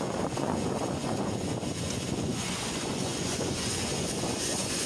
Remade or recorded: remade